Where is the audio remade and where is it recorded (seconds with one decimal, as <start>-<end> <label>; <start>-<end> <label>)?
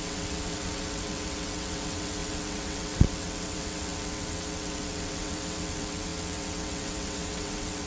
0.0-7.9 remade